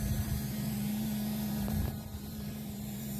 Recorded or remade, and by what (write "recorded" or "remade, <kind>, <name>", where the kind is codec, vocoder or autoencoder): remade, vocoder, BigVGAN v2